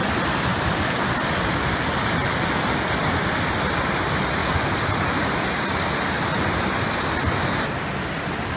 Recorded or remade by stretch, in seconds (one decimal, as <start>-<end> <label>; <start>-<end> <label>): 0.0-8.6 recorded